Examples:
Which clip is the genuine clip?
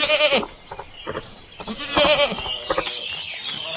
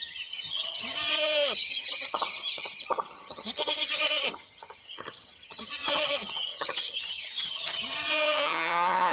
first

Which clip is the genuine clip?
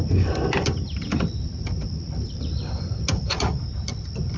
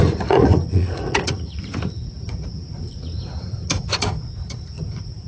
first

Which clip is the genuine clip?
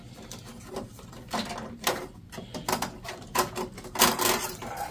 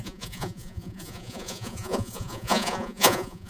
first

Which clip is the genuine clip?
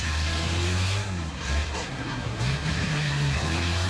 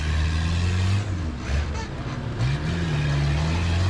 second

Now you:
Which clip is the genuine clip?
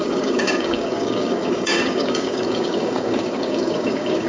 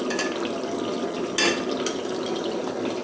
second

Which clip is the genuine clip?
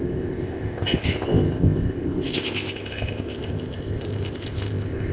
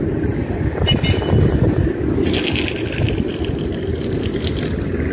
second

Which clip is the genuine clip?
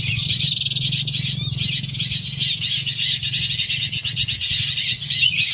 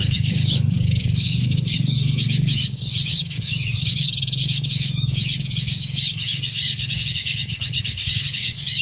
first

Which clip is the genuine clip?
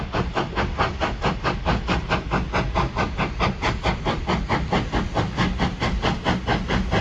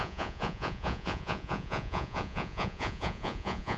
first